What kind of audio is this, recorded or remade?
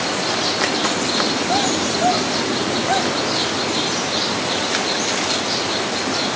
recorded